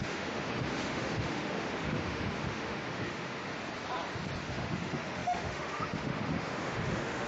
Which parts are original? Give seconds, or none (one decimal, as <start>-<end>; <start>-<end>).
3.5-4.4